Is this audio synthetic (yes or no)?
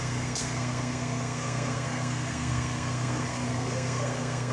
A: yes